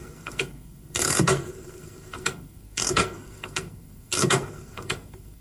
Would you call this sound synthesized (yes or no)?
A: yes